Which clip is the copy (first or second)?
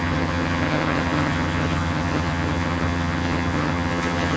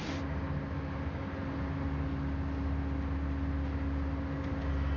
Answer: first